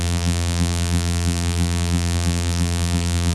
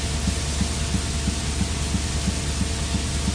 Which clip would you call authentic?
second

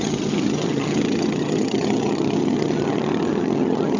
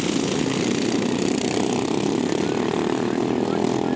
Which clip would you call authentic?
second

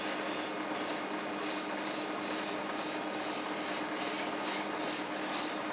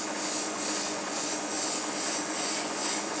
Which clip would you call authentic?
first